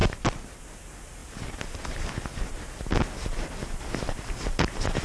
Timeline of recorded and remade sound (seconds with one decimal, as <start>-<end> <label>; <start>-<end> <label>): 0.0-5.0 recorded